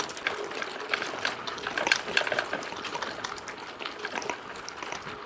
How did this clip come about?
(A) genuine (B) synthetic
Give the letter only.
A